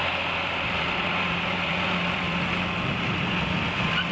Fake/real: fake